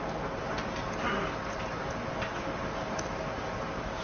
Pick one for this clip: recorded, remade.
recorded